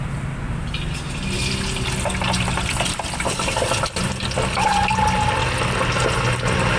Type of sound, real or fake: real